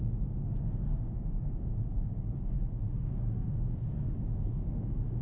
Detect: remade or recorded remade